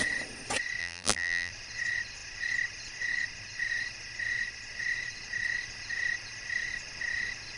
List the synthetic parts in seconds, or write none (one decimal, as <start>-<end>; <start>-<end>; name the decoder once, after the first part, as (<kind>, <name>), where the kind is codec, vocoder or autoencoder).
0.8-1.5 (vocoder, BigVGAN v2)

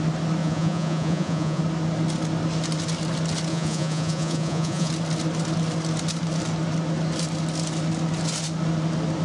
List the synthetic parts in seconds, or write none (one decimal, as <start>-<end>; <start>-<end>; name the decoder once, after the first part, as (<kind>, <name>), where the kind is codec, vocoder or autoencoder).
0.4-1.6 (vocoder, Vocos); 3.5-4.9

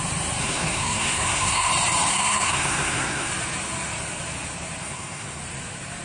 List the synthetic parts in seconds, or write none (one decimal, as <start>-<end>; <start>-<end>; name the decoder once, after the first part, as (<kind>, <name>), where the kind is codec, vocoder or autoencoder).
0.4-1.7 (codec, SNAC); 2.1-3.3; 4.8-5.4

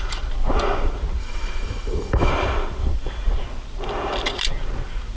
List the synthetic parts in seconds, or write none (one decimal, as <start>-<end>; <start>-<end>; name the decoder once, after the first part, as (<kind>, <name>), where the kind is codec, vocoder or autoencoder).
1.2-2.3 (autoencoder, DAC-VAE)

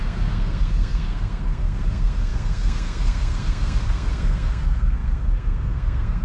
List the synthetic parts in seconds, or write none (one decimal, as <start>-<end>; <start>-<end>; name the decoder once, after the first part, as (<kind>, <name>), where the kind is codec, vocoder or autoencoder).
0.0-6.2 (codec, SNAC)

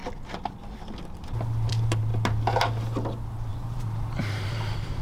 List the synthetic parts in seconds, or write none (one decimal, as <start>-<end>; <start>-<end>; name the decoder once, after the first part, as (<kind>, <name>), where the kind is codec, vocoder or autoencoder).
3.5-5.0 (vocoder, BigVGAN v2)